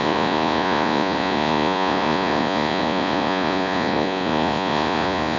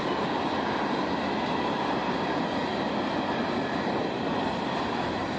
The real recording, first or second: second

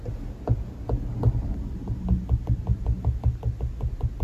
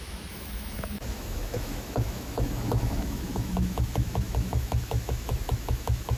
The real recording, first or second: first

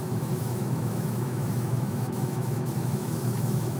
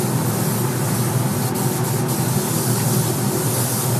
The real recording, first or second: second